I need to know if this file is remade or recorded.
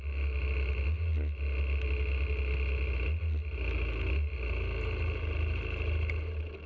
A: recorded